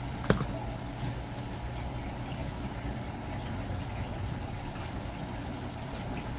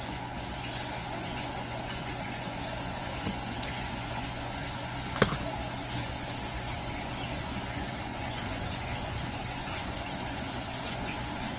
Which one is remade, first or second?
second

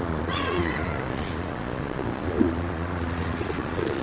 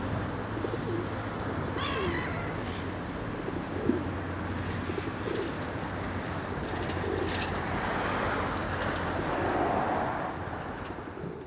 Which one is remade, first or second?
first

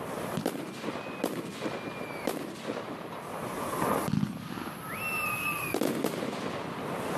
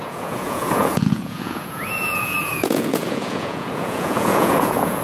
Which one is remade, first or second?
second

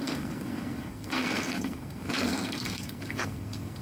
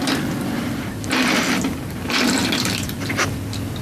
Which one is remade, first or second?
first